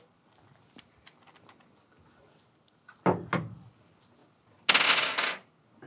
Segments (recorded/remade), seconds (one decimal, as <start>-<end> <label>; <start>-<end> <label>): 0.0-5.9 recorded